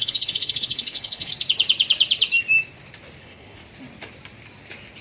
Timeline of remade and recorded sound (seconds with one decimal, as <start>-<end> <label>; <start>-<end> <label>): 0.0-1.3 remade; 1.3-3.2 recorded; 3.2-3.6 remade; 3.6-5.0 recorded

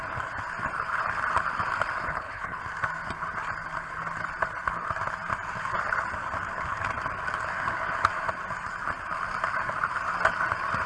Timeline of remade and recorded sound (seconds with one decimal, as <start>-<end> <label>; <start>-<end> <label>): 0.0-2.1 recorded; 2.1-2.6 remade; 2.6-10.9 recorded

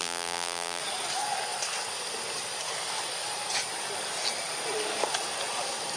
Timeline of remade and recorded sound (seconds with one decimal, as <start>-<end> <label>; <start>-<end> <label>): 0.0-0.8 remade; 0.8-6.0 recorded

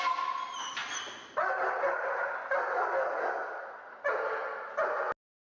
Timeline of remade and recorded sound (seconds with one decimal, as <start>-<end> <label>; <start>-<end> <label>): 0.0-5.5 recorded

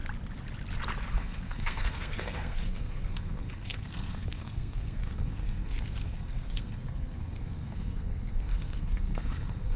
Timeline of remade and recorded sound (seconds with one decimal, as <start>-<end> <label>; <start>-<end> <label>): 0.0-1.1 recorded; 1.1-9.8 remade